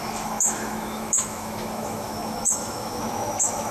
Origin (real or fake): fake